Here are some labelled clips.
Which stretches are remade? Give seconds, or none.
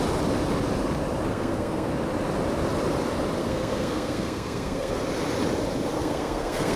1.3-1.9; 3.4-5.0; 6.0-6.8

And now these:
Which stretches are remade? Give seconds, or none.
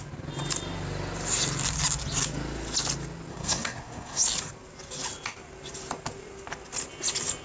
3.3-4.2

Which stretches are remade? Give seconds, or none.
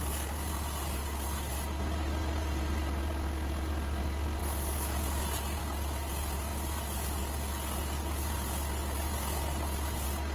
none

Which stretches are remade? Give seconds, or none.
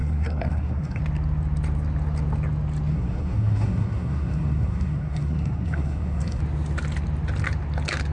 0.0-1.0; 2.9-6.4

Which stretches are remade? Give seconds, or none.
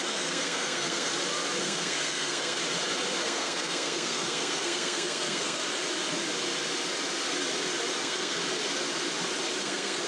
0.0-1.1; 1.6-2.6; 3.2-5.6; 8.0-8.4; 9.6-10.1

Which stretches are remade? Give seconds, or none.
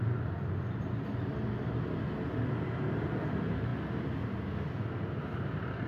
none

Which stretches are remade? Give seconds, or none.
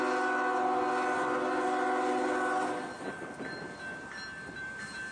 none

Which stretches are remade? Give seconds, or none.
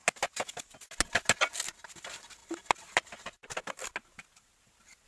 none